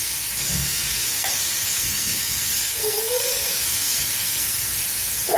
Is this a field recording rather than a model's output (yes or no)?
no